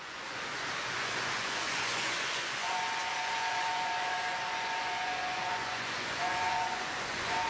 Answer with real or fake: fake